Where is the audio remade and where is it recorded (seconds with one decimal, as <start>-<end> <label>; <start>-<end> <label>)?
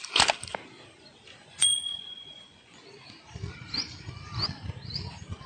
0.0-1.4 recorded; 1.4-2.8 remade; 2.8-5.5 recorded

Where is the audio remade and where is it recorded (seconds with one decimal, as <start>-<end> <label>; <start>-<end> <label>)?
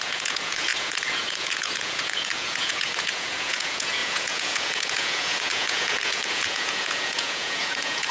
0.0-8.1 remade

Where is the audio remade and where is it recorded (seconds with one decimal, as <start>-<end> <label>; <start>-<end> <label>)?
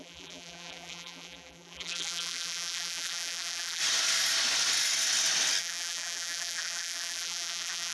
0.0-3.8 remade; 3.8-5.6 recorded; 5.6-7.9 remade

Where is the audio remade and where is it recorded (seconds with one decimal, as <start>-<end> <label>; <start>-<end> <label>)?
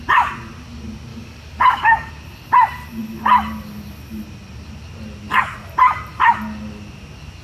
0.0-1.1 recorded; 1.1-2.1 remade; 2.1-7.4 recorded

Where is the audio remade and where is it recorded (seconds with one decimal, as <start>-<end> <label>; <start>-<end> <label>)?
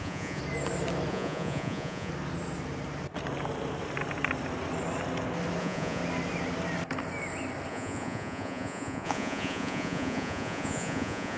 0.0-0.4 remade; 0.4-1.1 recorded; 1.1-2.1 remade; 2.1-5.6 recorded; 5.6-6.0 remade; 6.0-7.7 recorded; 7.7-11.4 remade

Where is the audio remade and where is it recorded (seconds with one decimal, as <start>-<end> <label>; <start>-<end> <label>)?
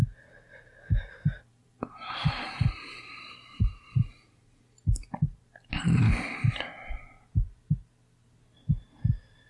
0.0-1.5 recorded; 1.5-4.6 remade; 4.6-9.5 recorded